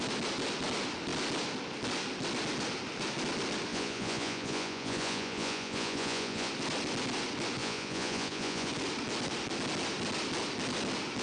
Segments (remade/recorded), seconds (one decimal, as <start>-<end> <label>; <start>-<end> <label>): 0.0-3.7 recorded; 3.7-6.5 remade; 6.5-7.6 recorded; 7.6-8.7 remade; 8.7-11.2 recorded